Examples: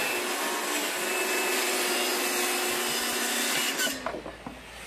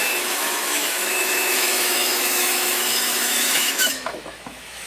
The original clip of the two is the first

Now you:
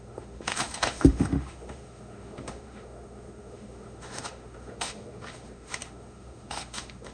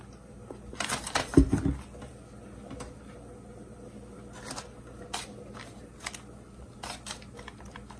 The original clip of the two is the second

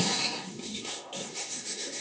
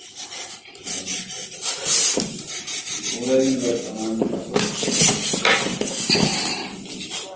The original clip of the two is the second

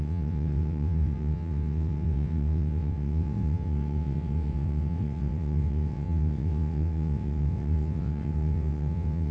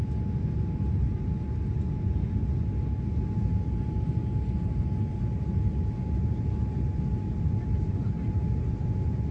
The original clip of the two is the second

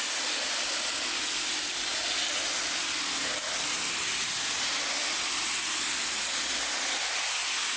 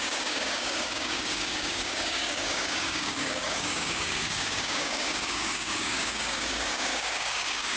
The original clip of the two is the first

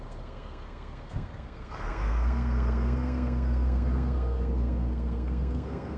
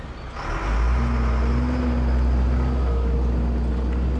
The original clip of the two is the second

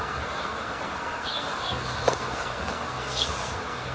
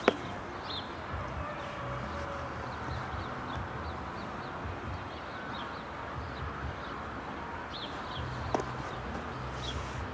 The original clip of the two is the second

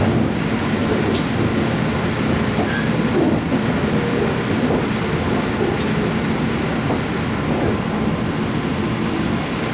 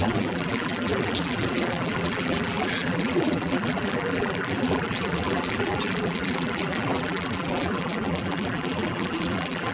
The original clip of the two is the first